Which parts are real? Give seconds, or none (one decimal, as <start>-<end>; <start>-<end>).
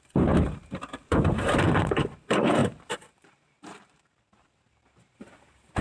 none